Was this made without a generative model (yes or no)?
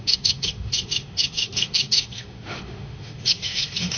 no